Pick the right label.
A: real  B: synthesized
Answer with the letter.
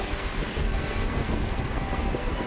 B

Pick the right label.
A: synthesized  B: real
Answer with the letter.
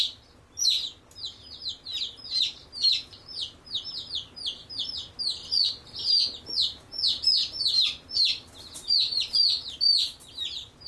B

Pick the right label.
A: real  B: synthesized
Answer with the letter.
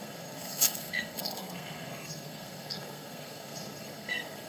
B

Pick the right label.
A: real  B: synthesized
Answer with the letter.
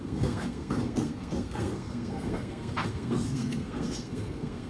B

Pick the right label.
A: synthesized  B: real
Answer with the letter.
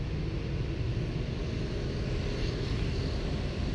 B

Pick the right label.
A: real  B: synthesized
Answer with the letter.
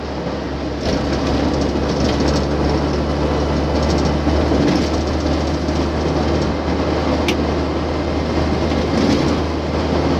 A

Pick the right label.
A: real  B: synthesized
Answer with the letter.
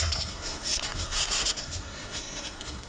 B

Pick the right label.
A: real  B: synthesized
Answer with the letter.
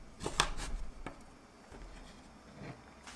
A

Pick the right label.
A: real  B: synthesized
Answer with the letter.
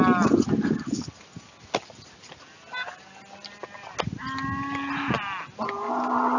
A